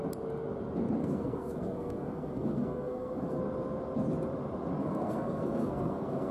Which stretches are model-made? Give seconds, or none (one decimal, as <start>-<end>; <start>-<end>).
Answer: 1.0-3.4; 4.8-6.3